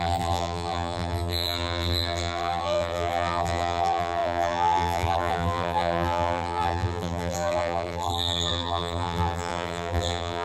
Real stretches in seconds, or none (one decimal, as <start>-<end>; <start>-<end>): none